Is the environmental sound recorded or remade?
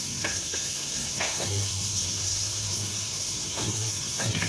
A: remade